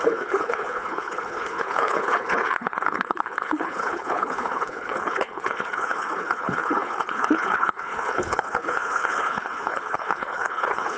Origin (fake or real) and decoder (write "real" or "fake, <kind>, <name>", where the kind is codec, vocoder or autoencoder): fake, codec, HILCodec